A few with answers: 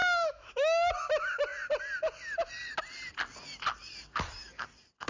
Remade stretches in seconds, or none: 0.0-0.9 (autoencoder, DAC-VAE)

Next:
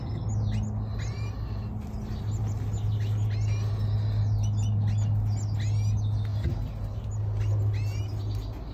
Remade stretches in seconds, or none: none

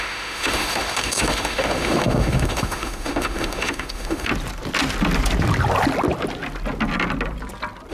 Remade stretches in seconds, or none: 0.0-4.3 (autoencoder, DAC-VAE)

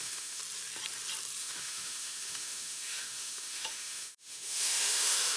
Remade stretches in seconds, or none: 0.0-0.4 (autoencoder, DAC-VAE); 1.4-5.4

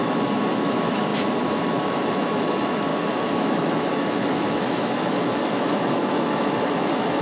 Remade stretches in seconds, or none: 0.6-7.2 (autoencoder, DAC-VAE)

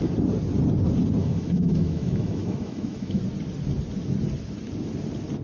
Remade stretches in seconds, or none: 1.2-3.2 (autoencoder, DAC-VAE)

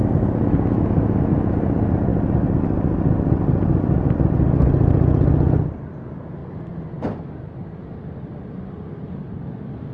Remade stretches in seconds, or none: 0.0-1.3 (autoencoder, DAC-VAE)

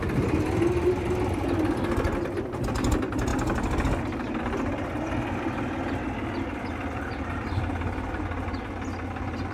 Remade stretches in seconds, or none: none